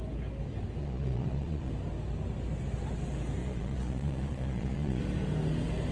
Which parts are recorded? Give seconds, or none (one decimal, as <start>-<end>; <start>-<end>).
0.0-0.8; 1.7-3.4; 5.0-5.9